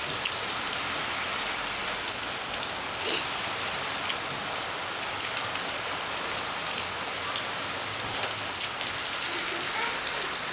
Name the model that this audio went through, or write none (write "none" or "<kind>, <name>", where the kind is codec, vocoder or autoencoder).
none